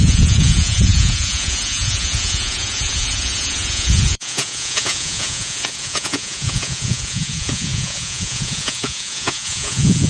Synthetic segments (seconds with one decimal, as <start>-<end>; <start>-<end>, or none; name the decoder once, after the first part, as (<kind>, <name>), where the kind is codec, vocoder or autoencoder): 0.0-10.1 (vocoder, Vocos)